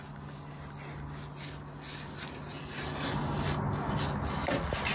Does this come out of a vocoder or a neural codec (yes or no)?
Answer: no